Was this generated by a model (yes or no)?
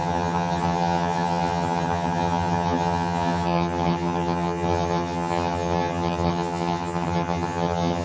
yes